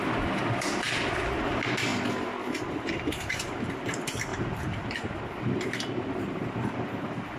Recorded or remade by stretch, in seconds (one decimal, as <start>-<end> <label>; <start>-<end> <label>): 0.0-4.3 recorded; 4.3-7.0 remade; 7.0-7.4 recorded